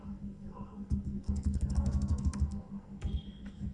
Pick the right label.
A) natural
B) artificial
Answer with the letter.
B